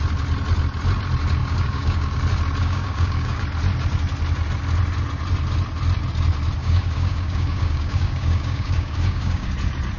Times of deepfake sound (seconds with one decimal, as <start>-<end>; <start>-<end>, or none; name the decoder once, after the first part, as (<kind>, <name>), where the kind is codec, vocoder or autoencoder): 1.4-2.2 (codec, DAC); 2.6-3.4; 6.6-9.5